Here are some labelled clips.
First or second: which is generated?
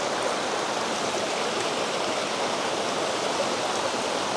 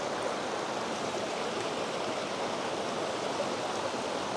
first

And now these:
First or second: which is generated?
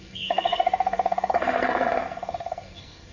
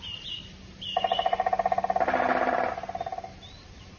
first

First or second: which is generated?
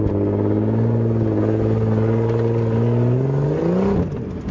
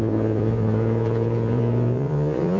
second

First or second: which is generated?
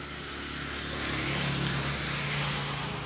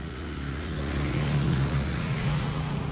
second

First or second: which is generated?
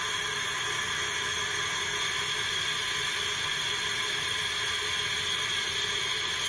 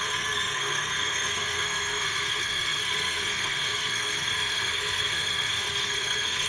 second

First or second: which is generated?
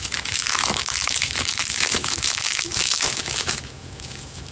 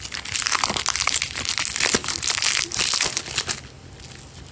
first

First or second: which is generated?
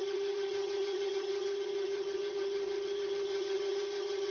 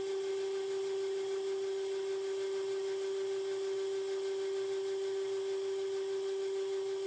first